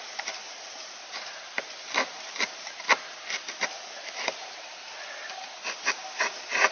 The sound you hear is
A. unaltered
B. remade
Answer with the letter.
B